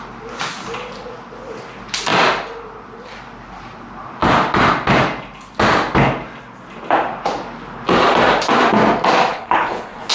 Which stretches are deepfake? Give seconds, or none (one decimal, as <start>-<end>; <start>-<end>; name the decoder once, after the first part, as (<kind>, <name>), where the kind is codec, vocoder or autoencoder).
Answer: 9.3-10.1 (codec, HILCodec)

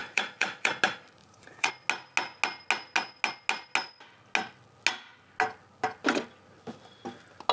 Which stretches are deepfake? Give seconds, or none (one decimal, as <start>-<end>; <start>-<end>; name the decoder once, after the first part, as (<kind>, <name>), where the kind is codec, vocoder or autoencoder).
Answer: 0.0-0.7 (vocoder, Vocos); 1.2-1.7

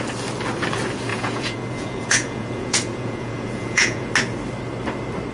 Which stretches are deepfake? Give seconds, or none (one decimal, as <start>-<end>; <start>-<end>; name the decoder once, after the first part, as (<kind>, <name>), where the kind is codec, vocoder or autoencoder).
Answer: 1.1-4.1 (vocoder, Vocos)

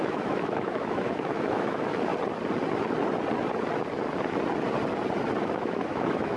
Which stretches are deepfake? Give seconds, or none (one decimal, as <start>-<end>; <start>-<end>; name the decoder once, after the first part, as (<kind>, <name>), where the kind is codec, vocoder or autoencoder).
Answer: 0.0-2.1 (autoencoder, DAC-VAE); 5.4-6.4